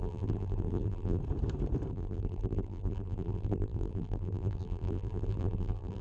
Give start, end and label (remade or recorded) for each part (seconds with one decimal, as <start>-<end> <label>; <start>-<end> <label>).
0.0-1.2 remade; 1.2-1.9 recorded; 1.9-6.0 remade